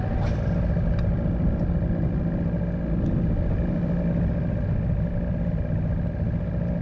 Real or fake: real